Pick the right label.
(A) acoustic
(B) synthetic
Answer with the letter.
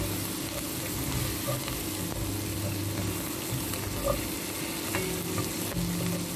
A